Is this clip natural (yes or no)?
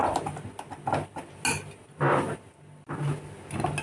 yes